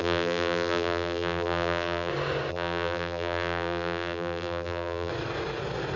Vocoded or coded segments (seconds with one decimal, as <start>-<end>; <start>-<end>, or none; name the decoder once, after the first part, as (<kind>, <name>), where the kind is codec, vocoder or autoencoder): 0.0-2.1 (vocoder, BigVGAN v2); 2.5-5.1

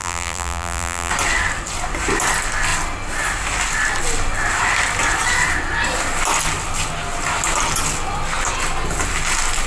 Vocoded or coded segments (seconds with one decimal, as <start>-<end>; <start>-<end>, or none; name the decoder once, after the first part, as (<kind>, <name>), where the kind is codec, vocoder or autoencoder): 0.0-1.1 (vocoder, BigVGAN v2)

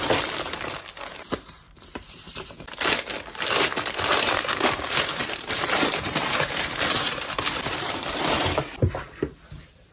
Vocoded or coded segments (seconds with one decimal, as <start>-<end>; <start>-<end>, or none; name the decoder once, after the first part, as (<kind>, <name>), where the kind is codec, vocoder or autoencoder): 1.1-2.4 (vocoder, BigVGAN v2); 4.1-8.9

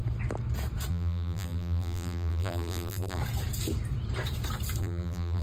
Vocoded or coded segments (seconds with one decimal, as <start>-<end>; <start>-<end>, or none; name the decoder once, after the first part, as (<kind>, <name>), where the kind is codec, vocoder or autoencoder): 0.9-3.2 (vocoder, BigVGAN v2); 4.8-5.4

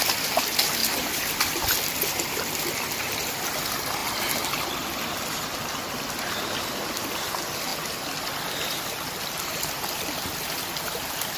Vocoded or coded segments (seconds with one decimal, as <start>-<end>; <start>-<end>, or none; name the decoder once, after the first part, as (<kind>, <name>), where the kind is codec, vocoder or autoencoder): 0.8-2.6 (vocoder, BigVGAN v2)

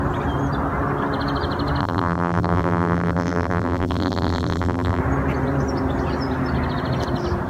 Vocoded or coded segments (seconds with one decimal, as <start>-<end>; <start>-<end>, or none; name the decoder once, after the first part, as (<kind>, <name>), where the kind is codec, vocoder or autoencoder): 1.8-5.0 (vocoder, BigVGAN v2)

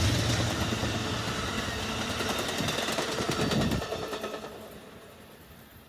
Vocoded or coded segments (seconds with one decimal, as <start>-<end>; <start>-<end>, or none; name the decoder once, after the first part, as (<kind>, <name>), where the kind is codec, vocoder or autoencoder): none